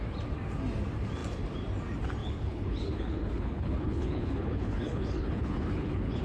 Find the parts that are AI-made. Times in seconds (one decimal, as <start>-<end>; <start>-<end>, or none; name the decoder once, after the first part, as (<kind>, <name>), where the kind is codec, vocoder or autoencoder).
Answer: 2.2-6.2 (codec, HILCodec)